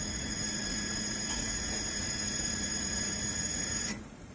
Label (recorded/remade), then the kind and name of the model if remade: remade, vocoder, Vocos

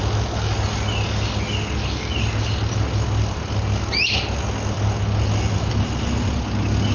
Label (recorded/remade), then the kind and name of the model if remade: recorded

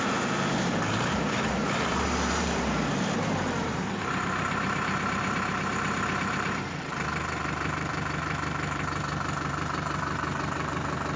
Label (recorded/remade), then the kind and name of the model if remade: remade, vocoder, BigVGAN v2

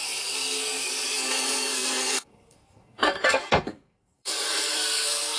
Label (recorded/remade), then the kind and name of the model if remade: remade, codec, SNAC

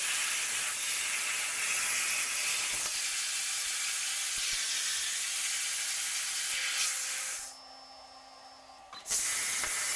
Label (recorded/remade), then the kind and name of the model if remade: recorded